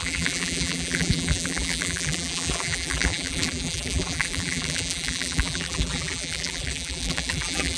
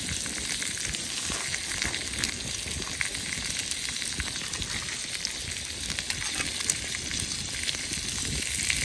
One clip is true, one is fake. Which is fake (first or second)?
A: first